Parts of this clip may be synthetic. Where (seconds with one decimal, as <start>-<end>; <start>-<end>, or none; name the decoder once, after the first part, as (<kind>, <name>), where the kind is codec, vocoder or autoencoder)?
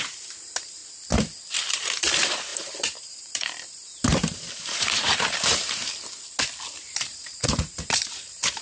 0.0-0.8 (vocoder, BigVGAN v2); 1.7-5.9; 6.8-8.6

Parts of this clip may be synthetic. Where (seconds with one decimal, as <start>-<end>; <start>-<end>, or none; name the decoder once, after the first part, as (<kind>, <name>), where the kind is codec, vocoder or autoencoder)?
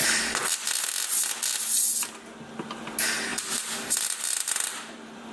0.0-0.8 (vocoder, BigVGAN v2); 3.3-5.3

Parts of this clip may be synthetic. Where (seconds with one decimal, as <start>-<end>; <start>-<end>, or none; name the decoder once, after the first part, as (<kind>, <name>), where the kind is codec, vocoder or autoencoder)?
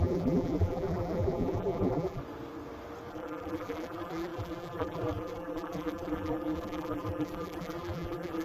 0.0-2.2 (vocoder, BigVGAN v2); 3.1-8.4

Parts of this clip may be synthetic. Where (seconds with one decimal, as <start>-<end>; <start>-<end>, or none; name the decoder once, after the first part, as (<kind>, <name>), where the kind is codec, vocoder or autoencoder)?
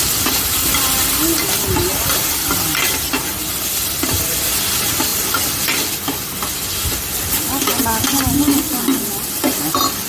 none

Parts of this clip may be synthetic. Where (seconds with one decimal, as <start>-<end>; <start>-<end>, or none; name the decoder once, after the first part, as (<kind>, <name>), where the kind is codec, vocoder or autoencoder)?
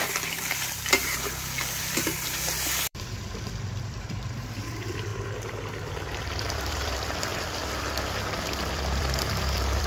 0.0-5.1 (vocoder, BigVGAN v2); 6.2-7.3; 8.7-9.9